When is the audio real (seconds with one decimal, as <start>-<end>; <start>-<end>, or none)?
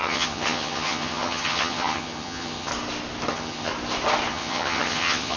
2.7-3.3; 3.7-4.3